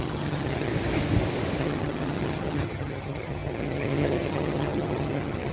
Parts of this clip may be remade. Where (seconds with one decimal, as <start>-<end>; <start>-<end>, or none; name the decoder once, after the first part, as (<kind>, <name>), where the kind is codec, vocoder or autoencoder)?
0.0-0.7 (vocoder, HiFi-GAN); 1.6-5.5